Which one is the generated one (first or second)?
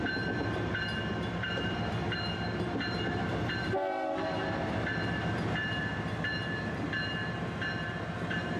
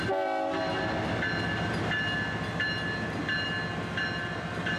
first